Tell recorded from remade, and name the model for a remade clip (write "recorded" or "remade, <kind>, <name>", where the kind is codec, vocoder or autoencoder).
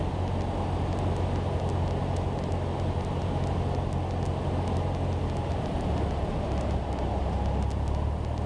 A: recorded